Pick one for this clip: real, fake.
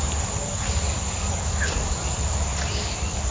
real